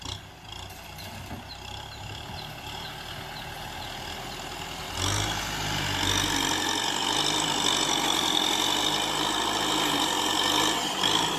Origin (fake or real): real